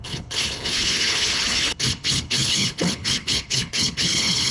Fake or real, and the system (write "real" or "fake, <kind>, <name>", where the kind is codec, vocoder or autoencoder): fake, codec, HILCodec